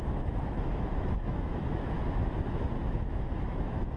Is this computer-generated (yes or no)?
yes